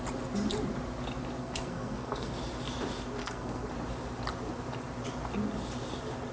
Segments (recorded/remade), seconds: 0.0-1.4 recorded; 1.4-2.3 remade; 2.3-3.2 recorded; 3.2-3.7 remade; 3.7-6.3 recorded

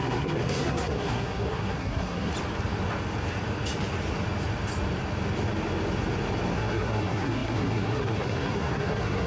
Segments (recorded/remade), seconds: 0.0-2.3 remade; 2.3-6.5 recorded; 6.5-9.3 remade